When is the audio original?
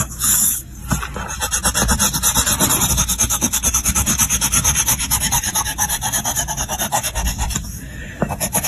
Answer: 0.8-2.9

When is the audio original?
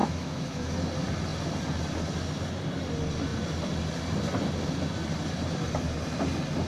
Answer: 0.7-6.7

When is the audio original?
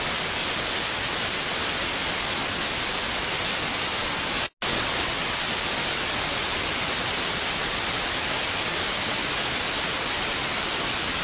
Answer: 0.0-5.0; 5.5-11.2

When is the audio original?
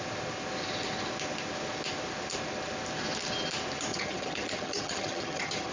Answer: 0.0-3.9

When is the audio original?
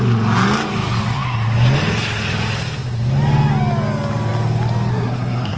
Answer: 0.0-4.9